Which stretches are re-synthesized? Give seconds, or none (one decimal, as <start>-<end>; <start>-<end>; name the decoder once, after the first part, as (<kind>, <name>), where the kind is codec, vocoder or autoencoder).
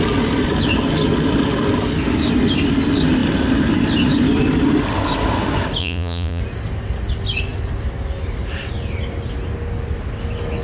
5.8-6.4 (vocoder, Vocos)